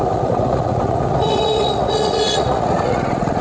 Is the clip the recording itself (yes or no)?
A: no